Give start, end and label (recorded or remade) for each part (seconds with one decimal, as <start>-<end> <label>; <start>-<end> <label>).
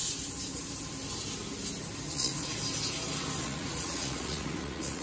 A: 0.0-2.1 recorded; 2.1-2.5 remade; 2.5-3.4 recorded; 3.4-5.0 remade